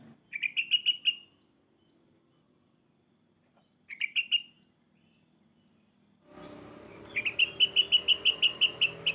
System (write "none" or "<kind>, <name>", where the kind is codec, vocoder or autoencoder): none